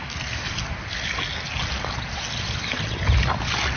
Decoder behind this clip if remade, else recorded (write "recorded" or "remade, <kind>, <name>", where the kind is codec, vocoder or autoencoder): recorded